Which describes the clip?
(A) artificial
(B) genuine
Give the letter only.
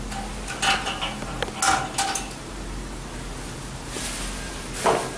B